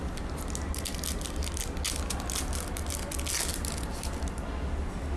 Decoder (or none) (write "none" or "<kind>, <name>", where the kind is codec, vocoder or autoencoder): none